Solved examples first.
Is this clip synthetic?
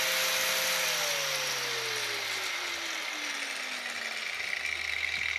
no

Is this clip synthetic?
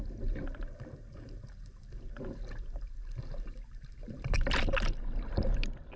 no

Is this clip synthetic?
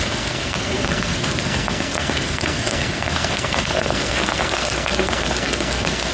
yes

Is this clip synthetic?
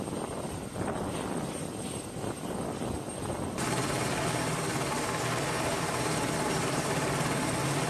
no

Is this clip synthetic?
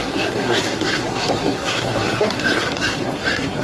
yes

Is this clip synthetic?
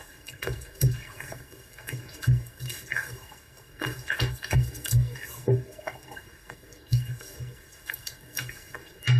yes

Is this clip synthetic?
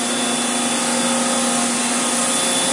no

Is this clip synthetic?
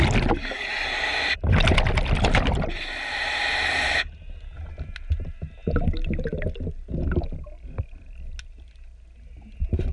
no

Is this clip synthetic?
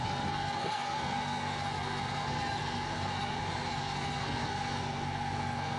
yes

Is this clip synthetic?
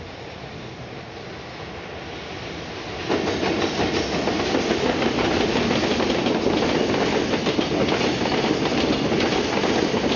no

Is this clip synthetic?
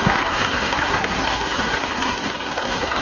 yes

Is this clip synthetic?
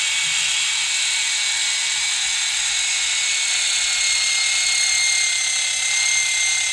no